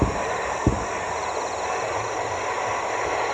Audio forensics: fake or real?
real